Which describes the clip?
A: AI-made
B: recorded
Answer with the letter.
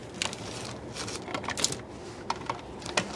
B